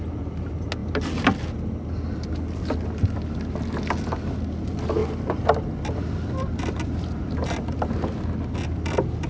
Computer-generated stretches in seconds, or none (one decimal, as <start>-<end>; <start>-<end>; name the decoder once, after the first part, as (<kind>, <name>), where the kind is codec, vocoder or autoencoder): 5.0-7.8 (vocoder, BigVGAN v2)